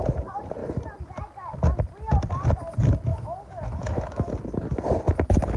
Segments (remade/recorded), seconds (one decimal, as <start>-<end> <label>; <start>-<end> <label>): 0.0-3.1 recorded; 3.1-4.3 remade; 4.3-5.6 recorded